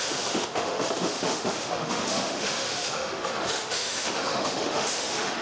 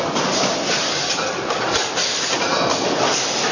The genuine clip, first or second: second